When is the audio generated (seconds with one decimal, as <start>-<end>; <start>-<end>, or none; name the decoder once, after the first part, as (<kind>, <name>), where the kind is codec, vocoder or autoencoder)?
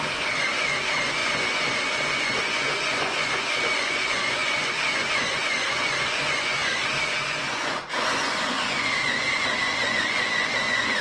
0.0-11.0 (vocoder, Vocos)